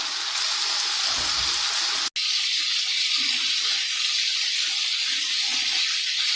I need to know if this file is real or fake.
real